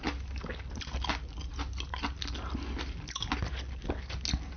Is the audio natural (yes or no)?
yes